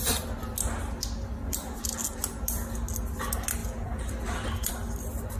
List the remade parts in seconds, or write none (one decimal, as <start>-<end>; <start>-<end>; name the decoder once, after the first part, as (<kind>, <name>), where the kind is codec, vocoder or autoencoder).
3.6-4.7 (vocoder, BigVGAN v2)